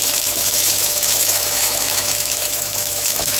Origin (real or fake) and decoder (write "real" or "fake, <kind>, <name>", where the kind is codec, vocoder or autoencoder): fake, autoencoder, DAC-VAE